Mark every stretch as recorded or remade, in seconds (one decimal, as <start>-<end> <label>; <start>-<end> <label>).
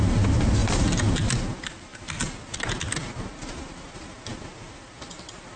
0.0-5.6 recorded